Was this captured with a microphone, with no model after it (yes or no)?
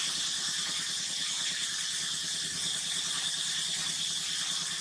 yes